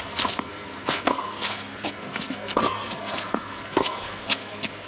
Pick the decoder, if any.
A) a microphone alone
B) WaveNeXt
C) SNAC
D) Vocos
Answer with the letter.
C